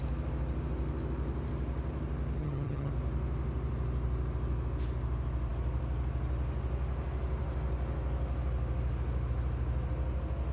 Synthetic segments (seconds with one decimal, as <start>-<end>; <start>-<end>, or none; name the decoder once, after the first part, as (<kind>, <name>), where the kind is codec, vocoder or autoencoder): 2.4-2.9 (vocoder, HiFi-GAN)